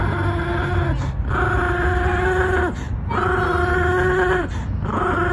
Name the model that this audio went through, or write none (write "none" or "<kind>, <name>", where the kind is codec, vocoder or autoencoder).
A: none